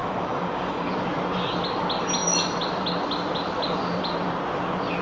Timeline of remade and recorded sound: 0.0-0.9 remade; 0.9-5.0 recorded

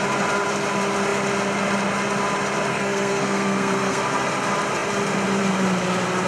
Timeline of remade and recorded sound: 0.0-2.7 recorded; 2.7-4.0 remade; 4.0-6.3 recorded

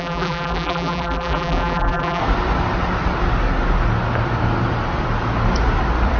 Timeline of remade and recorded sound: 0.0-2.2 remade; 2.2-6.2 recorded

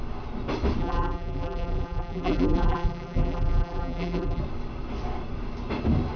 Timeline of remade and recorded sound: 0.0-0.8 recorded; 0.8-4.4 remade; 4.4-6.2 recorded

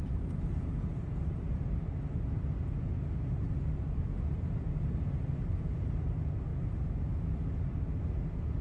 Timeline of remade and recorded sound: 0.0-8.6 recorded

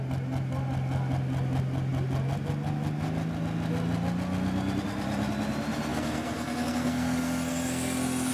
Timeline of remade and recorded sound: 0.0-5.9 recorded; 5.9-8.3 remade

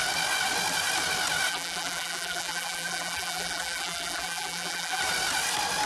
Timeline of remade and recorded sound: 0.0-1.5 recorded; 1.5-5.0 remade; 5.0-5.9 recorded

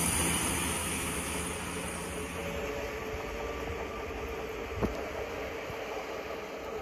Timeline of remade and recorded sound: 0.0-0.8 recorded; 0.8-1.4 remade; 1.4-6.8 recorded